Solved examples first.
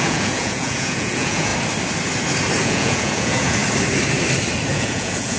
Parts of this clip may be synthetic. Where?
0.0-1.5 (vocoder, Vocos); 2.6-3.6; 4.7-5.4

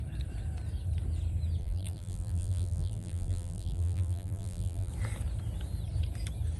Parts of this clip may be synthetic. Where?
1.6-4.9 (vocoder, BigVGAN v2)

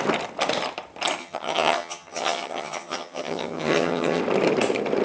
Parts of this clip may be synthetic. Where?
1.2-4.2 (vocoder, HiFi-GAN)

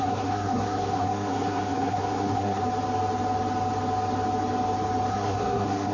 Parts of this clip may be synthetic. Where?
0.0-2.6 (codec, SNAC); 5.1-5.9

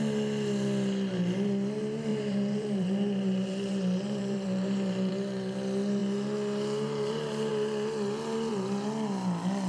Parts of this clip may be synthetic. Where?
2.1-5.1 (vocoder, BigVGAN v2)

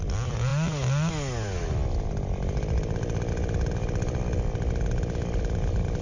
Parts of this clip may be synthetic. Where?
none

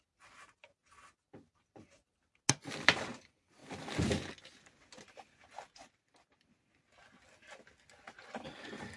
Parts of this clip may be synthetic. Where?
none